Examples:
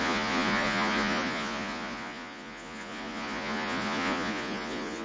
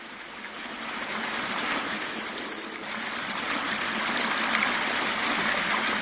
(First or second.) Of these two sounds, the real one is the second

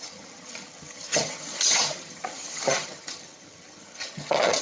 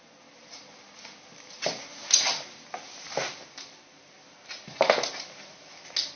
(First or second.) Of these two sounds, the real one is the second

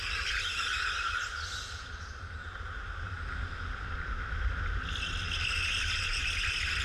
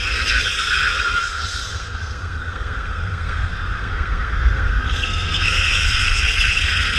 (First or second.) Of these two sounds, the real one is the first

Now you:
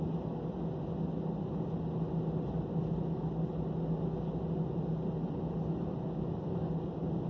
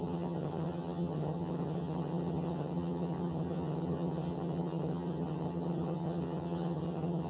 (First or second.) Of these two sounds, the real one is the first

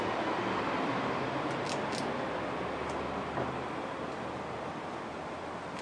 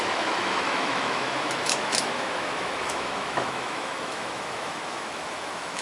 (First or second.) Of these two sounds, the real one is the first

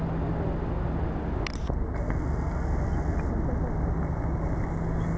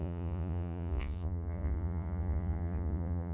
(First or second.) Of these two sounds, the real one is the first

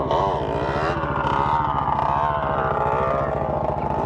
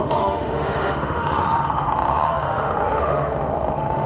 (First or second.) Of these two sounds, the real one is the first